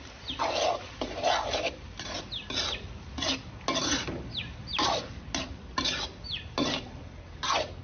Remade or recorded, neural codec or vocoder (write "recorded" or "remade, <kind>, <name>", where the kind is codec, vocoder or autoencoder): recorded